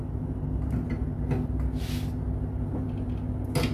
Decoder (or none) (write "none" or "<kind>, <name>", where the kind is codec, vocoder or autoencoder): none